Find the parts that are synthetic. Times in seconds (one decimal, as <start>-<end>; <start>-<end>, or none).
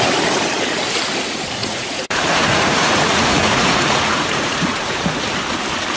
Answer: 1.6-5.2